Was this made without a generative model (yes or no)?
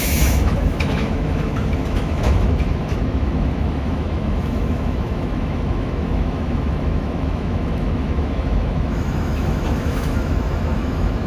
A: no